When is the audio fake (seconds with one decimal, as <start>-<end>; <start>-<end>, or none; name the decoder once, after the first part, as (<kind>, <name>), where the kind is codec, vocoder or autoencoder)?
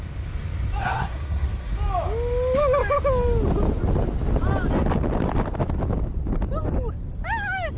0.8-1.7 (codec, SNAC)